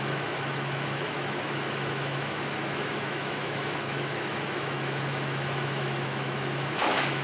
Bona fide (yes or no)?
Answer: no